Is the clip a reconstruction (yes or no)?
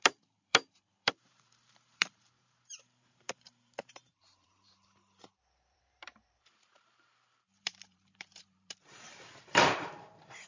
yes